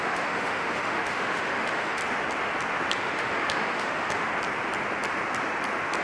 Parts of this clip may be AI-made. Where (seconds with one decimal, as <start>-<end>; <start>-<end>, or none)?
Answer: 0.0-2.0; 3.0-4.3